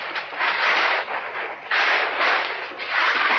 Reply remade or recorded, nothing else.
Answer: recorded